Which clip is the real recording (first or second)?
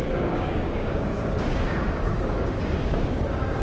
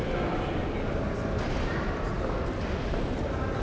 second